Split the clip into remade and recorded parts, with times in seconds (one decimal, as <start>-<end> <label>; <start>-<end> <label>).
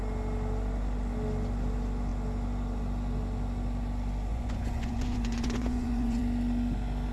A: 0.0-4.3 recorded; 4.3-6.2 remade; 6.2-7.1 recorded